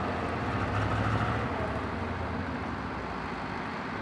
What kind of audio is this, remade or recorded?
recorded